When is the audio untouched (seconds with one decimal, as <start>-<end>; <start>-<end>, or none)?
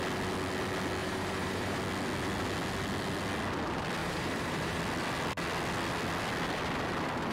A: 0.0-1.0; 1.8-4.0; 4.8-7.3